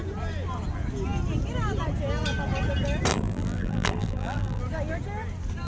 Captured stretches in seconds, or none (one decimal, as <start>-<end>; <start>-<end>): 0.0-3.1; 4.6-5.7